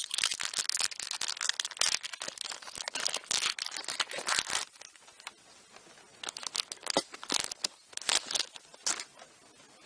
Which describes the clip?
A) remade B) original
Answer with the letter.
B